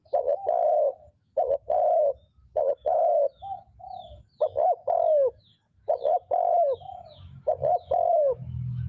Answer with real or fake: fake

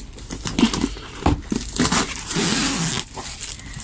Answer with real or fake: real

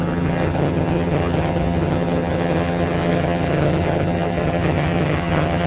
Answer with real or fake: fake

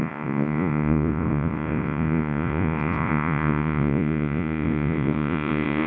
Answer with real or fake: fake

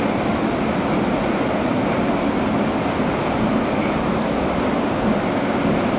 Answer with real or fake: real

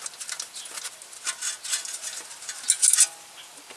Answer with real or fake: real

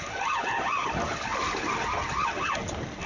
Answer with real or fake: real